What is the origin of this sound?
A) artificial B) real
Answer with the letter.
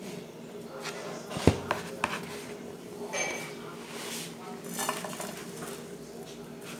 B